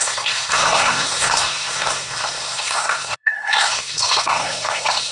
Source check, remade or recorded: remade